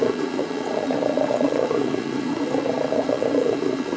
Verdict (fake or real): fake